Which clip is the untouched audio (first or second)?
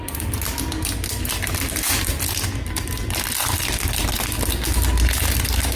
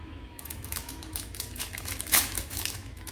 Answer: first